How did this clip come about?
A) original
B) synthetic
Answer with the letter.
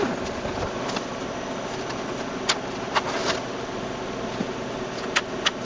A